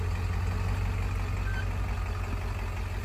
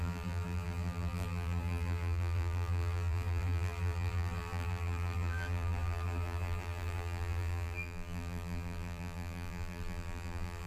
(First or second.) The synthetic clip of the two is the second